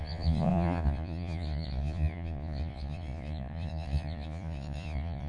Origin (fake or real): fake